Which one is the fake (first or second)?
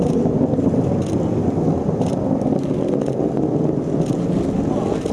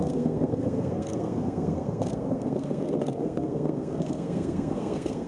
second